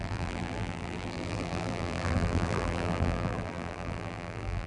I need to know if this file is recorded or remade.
remade